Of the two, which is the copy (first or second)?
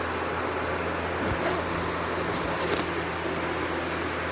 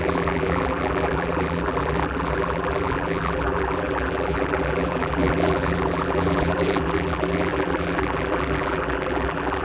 second